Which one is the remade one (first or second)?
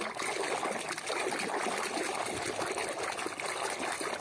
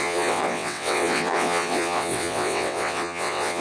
second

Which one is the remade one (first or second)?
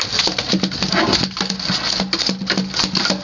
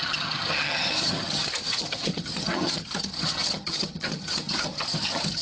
second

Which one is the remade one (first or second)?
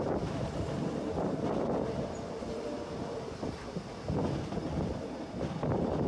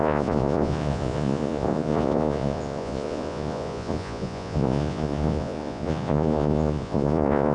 second